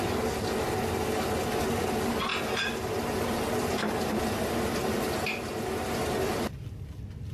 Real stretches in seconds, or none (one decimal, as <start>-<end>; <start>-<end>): 0.0-7.3